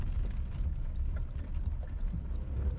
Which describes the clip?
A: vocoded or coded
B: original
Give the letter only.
B